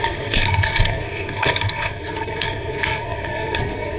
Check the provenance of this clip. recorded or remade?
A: remade